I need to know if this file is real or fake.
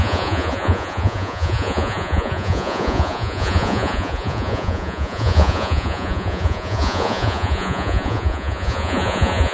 fake